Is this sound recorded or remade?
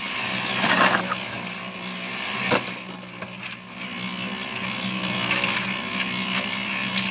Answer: recorded